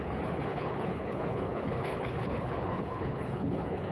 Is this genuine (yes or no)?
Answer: no